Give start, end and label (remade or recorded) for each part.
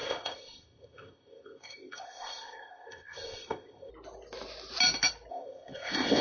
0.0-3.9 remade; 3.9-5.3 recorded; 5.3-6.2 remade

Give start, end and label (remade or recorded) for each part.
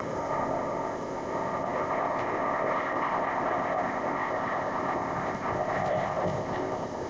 0.0-7.1 remade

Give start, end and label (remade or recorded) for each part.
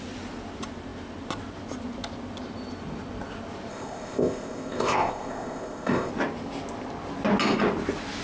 0.0-3.7 recorded; 3.7-6.1 remade; 6.1-8.2 recorded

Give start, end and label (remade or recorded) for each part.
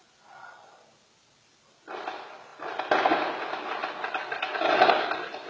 0.0-5.5 recorded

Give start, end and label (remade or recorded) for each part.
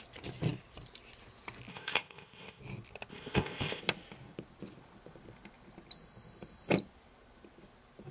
0.0-1.7 recorded; 1.7-2.6 remade; 2.6-3.1 recorded; 3.1-3.8 remade; 3.8-8.1 recorded